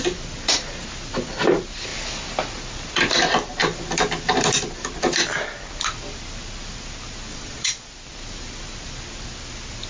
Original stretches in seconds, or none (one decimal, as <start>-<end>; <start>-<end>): 0.0-7.3; 7.9-9.9